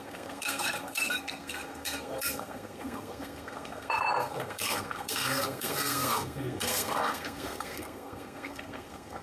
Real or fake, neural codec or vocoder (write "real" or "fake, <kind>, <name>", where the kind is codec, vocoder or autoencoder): fake, codec, SNAC